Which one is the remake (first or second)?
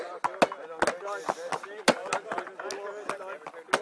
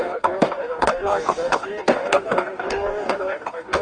second